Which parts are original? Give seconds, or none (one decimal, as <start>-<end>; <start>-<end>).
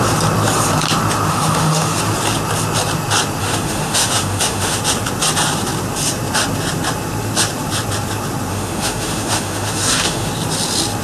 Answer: 0.0-1.3; 2.0-3.4; 4.8-8.5; 10.3-11.0